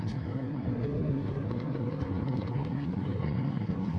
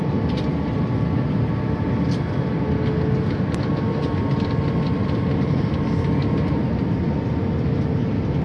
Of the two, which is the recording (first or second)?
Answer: second